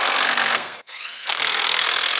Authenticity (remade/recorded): remade